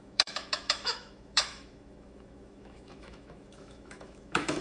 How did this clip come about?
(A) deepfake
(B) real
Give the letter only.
A